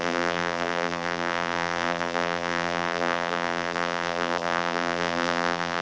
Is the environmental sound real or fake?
fake